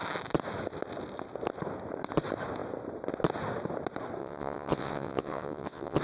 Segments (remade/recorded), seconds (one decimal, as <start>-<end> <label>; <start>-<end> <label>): 0.0-4.2 recorded; 4.2-6.0 remade